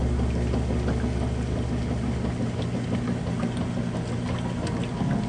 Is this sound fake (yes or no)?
no